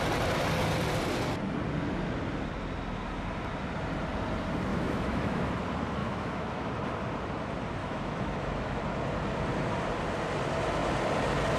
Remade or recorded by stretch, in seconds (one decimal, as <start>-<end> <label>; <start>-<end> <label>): 0.0-4.7 recorded; 4.7-5.5 remade; 5.5-6.0 recorded; 6.0-6.7 remade; 6.7-7.8 recorded; 7.8-8.8 remade; 8.8-11.6 recorded